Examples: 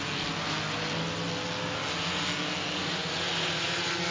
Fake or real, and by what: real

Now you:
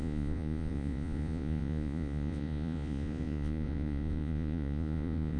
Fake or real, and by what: fake, vocoder, Vocos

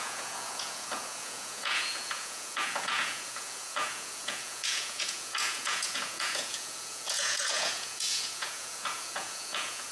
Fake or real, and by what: fake, vocoder, Vocos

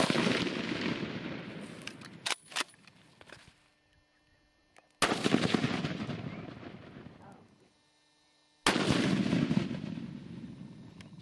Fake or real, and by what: real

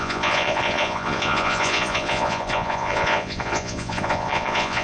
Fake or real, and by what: fake, vocoder, Vocos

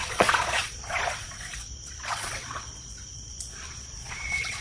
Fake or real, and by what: fake, vocoder, Vocos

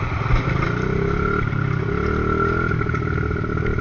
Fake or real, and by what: real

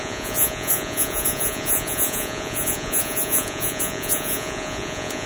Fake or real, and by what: fake, vocoder, Vocos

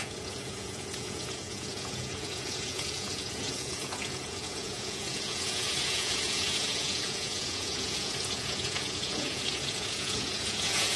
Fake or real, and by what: fake, vocoder, Vocos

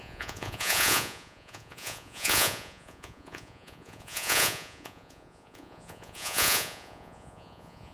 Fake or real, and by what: fake, vocoder, Vocos